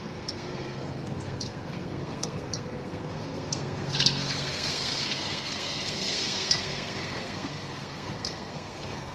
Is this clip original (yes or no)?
no